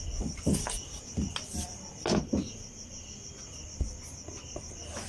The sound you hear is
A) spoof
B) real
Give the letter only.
B